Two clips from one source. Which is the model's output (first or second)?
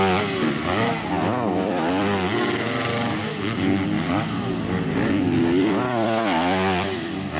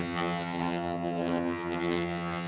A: second